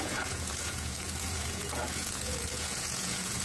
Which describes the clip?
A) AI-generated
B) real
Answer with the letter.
A